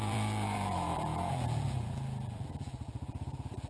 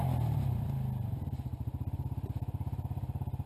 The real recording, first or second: second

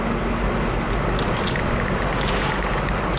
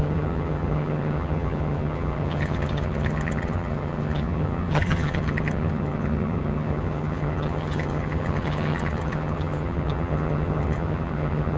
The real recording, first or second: first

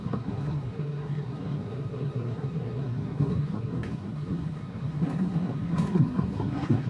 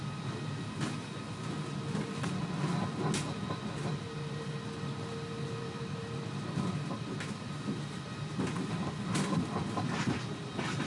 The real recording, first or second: second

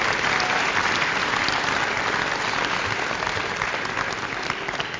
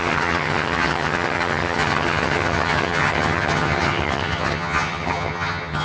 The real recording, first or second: first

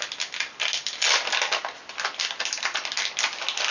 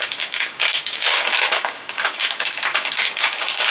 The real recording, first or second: first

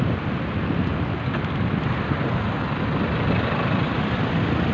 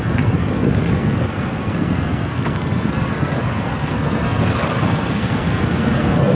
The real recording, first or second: first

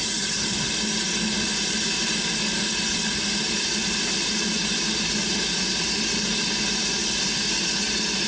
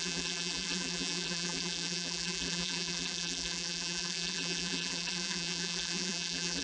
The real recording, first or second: first